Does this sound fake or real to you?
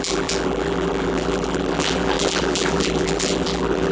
fake